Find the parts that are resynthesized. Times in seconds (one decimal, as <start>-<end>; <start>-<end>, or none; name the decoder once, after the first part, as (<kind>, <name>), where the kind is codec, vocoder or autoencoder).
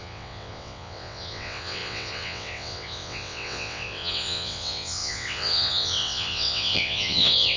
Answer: 0.0-7.6 (vocoder, WaveNeXt)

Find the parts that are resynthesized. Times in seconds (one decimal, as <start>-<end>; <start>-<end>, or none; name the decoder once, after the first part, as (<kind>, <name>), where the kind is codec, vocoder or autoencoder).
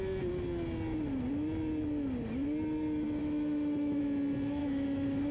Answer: 3.2-4.0 (autoencoder, DAC-VAE); 4.6-5.3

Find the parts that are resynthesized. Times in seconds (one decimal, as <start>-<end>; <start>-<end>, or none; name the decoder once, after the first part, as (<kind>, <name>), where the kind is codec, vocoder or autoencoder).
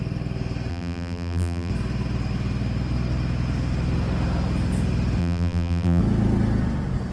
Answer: 0.7-1.7 (vocoder, BigVGAN v2); 5.2-6.0